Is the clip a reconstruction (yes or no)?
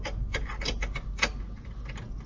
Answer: no